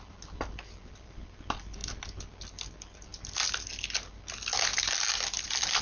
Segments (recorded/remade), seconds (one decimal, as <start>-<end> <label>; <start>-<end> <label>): 0.0-1.8 remade; 1.8-2.7 recorded; 2.7-3.1 remade; 3.1-5.1 recorded; 5.1-5.8 remade